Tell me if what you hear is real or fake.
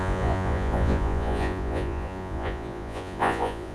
fake